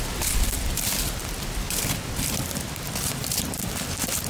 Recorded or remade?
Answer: recorded